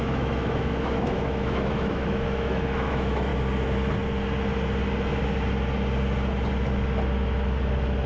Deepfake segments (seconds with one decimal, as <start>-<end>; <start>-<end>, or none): 0.0-3.3